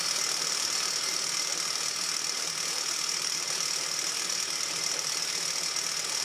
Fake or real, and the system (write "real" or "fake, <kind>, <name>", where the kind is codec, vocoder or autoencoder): real